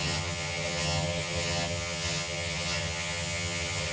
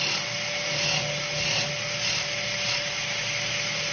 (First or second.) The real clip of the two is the second